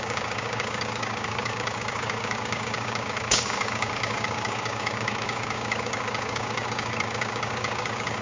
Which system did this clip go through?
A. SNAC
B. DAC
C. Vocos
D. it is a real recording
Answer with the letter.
B